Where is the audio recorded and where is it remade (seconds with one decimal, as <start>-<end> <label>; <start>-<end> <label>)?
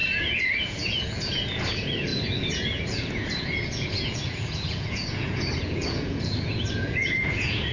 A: 0.0-7.7 remade